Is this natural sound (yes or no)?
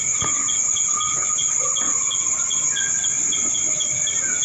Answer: yes